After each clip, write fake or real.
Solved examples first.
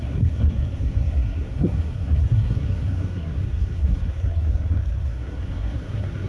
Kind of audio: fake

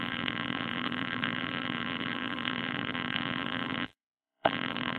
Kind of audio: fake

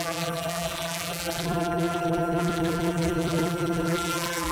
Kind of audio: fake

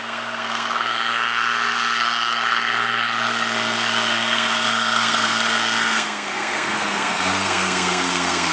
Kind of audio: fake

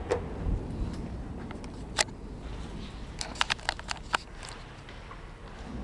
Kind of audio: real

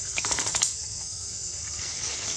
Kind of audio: fake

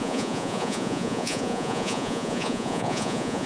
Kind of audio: fake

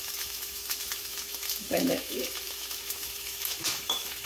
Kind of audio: fake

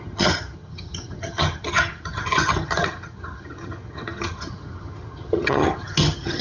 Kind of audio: fake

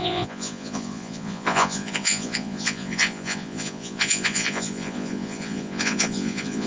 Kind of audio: fake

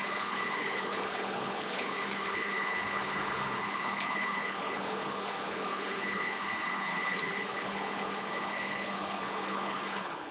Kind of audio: fake